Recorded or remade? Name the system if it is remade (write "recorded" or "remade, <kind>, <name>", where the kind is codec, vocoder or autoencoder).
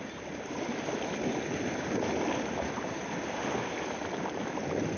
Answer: recorded